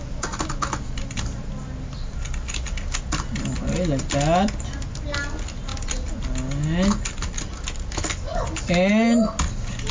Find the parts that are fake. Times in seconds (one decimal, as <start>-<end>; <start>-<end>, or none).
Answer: none